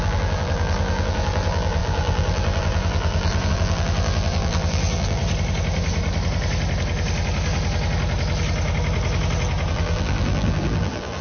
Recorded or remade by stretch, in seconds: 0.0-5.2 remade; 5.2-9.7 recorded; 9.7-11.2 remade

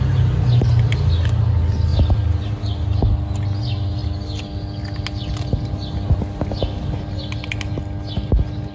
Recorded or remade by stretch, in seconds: 0.0-8.7 recorded